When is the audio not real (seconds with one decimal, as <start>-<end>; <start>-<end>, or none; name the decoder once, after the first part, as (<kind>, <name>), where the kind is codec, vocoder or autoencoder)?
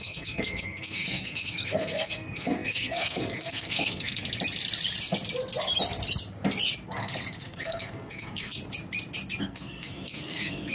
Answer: 0.0-4.2 (codec, SNAC); 7.4-8.6; 9.4-10.7